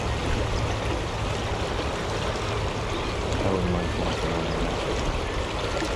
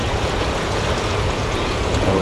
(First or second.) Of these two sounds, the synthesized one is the second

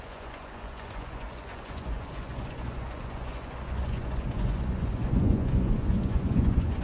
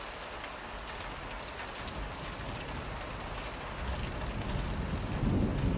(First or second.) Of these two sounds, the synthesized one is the first